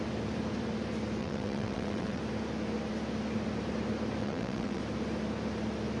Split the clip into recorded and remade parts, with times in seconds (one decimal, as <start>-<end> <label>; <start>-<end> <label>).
0.0-1.2 recorded; 1.2-2.2 remade; 2.2-4.2 recorded; 4.2-4.8 remade; 4.8-6.0 recorded